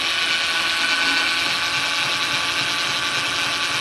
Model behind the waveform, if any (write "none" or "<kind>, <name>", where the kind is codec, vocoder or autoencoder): none